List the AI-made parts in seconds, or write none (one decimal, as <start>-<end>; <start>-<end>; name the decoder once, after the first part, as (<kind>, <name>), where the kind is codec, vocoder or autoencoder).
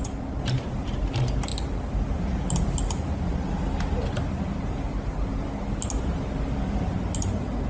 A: none